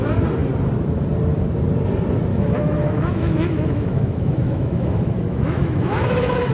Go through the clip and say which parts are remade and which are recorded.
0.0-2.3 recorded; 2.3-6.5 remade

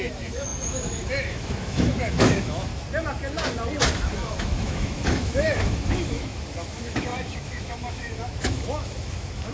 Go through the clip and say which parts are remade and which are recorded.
0.0-2.7 remade; 2.7-3.8 recorded; 3.8-9.5 remade

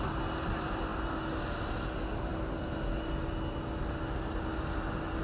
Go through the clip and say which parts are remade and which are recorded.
0.0-5.2 recorded

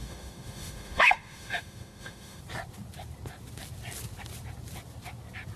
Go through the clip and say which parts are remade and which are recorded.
0.0-2.4 remade; 2.4-5.6 recorded